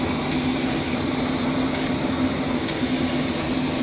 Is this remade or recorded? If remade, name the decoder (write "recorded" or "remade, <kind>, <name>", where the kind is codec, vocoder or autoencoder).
recorded